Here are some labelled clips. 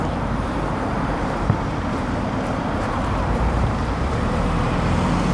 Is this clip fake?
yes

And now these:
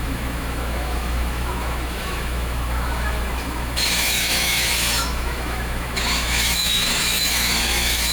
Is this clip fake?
yes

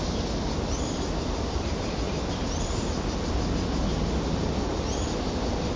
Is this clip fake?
no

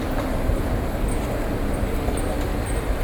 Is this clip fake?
no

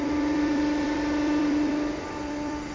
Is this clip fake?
yes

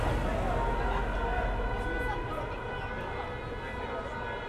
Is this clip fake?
no